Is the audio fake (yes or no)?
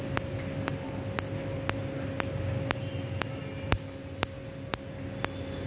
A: no